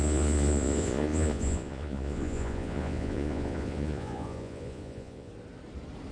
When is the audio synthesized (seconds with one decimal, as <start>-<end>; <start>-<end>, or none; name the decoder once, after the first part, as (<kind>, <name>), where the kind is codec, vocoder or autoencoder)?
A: 0.0-5.3 (vocoder, Vocos)